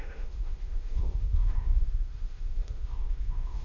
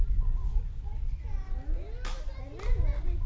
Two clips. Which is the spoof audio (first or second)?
first